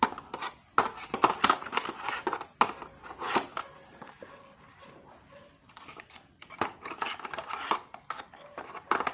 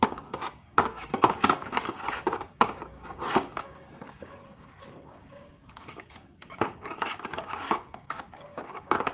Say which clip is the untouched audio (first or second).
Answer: first